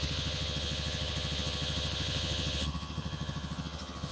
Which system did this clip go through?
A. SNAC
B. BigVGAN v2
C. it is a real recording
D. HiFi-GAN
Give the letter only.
D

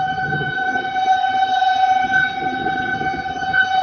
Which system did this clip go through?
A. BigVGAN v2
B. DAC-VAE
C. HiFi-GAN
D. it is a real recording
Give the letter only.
C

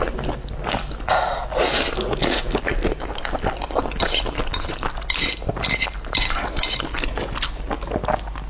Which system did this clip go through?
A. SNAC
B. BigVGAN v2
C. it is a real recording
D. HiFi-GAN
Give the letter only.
C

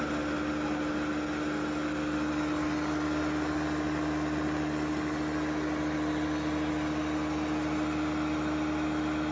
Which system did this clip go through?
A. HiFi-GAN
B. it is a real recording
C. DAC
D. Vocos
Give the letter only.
B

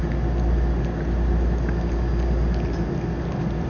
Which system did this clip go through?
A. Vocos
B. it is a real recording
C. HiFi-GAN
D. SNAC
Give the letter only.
B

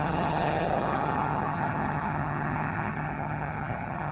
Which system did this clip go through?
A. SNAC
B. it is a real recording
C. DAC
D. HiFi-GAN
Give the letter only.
D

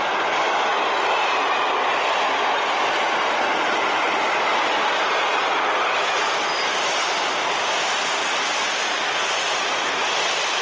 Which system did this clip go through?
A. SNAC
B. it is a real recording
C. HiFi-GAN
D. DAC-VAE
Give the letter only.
B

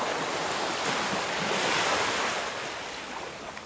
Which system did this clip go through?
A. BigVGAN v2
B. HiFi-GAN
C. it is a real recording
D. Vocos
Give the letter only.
C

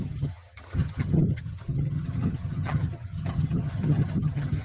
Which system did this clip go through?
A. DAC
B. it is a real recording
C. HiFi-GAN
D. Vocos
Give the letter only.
C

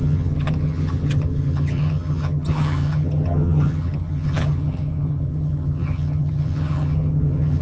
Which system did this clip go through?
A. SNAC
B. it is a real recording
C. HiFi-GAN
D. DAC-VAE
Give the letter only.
C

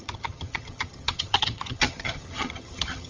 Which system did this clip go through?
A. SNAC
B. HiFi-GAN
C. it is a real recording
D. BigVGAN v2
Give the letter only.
B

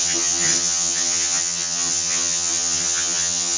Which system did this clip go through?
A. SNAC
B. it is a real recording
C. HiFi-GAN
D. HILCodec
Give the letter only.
C